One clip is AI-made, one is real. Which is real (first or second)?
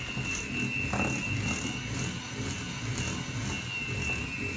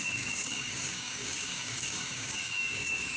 first